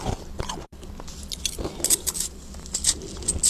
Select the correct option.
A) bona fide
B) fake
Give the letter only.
A